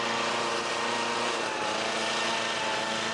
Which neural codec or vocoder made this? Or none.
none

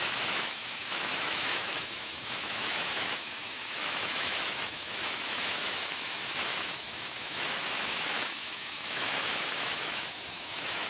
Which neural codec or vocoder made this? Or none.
autoencoder, DAC-VAE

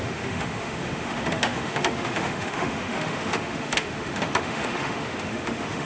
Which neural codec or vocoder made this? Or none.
autoencoder, DAC-VAE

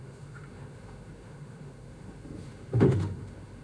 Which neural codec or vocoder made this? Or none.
autoencoder, DAC-VAE